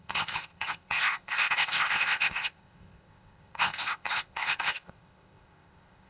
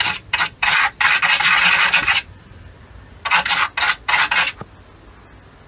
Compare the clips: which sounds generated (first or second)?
first